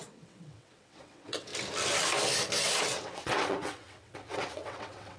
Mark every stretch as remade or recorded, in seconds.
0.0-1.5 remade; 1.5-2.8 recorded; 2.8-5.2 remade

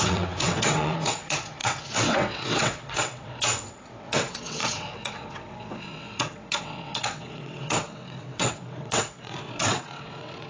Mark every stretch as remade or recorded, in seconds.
0.0-10.5 remade

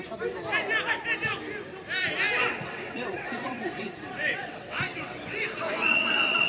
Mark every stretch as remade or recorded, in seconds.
0.0-2.4 recorded; 2.4-6.5 remade

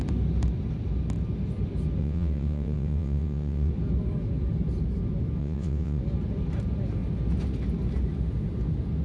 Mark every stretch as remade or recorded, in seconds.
0.0-2.0 recorded; 2.0-3.7 remade; 3.7-5.4 recorded; 5.4-6.0 remade; 6.0-9.0 recorded

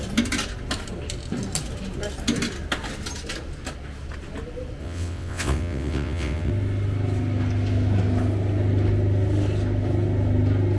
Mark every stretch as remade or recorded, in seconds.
0.0-4.8 recorded; 4.8-6.5 remade; 6.5-10.8 recorded

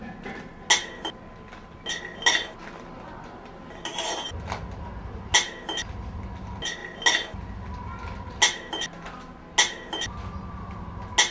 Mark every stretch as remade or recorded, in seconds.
0.0-11.3 recorded

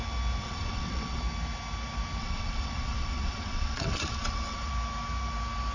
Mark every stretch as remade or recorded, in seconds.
0.0-0.4 recorded; 0.4-1.2 remade; 1.2-2.2 recorded; 2.2-4.7 remade; 4.7-5.7 recorded